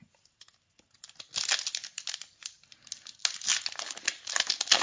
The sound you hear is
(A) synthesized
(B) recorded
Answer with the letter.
B